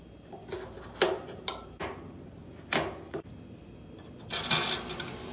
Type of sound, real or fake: real